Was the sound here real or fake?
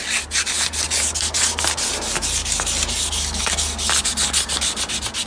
real